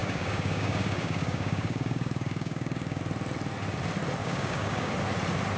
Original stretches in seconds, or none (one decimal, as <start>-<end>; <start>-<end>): 3.0-4.2; 4.9-5.6